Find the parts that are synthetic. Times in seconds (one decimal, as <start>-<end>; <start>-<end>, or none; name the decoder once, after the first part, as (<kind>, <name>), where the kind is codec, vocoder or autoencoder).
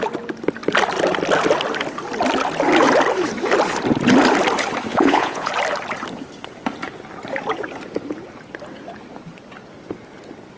4.9-5.5 (vocoder, Vocos)